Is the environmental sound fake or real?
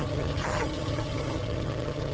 fake